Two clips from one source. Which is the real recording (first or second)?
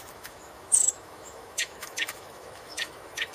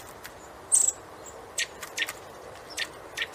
second